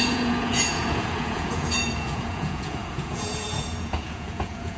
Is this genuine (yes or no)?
no